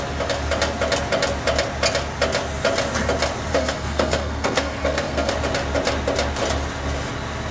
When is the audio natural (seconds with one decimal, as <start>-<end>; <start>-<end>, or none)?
0.0-3.5; 5.3-7.5